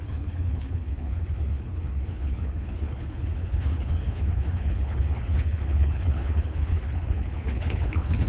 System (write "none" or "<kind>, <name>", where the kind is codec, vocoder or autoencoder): codec, HILCodec